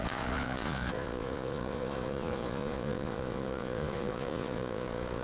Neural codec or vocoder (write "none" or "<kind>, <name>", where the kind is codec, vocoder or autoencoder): vocoder, Vocos